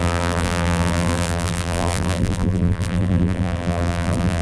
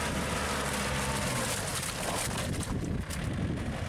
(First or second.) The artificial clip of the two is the first